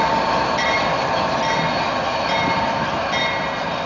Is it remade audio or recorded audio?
recorded